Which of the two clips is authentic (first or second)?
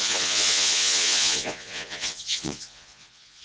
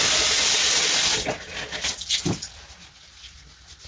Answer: second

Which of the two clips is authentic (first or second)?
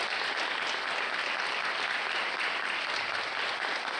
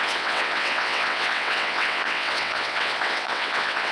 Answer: first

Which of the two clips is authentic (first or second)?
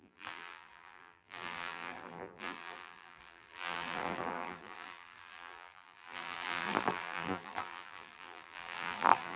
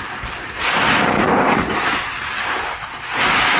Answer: second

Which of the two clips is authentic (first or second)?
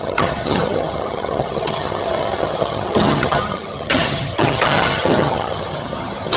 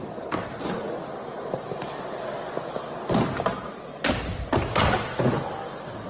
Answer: second